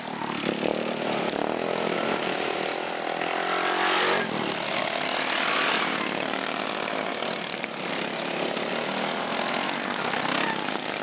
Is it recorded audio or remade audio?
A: recorded